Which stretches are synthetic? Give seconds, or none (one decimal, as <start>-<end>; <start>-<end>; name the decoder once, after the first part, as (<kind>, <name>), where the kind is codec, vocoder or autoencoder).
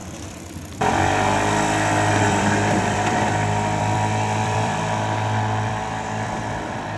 0.0-7.0 (vocoder, BigVGAN v2)